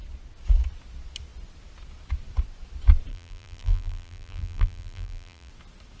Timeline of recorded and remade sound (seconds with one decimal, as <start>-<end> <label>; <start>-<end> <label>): 0.0-3.1 recorded; 3.1-5.5 remade; 5.5-6.0 recorded